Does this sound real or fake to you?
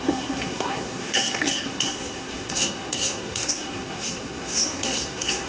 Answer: fake